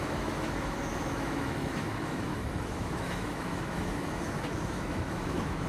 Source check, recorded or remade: remade